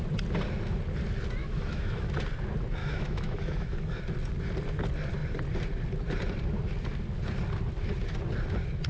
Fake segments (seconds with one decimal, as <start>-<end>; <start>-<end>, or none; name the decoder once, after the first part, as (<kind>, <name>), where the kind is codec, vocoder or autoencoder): 1.4-2.1 (autoencoder, DAC-VAE); 2.8-4.0